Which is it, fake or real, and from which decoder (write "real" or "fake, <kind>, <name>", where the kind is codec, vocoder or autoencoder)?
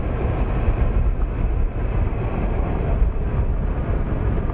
real